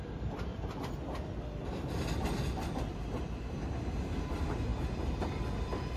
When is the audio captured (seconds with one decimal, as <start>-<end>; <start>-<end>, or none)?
0.0-6.0